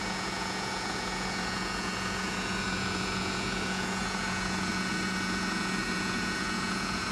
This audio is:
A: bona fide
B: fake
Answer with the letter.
B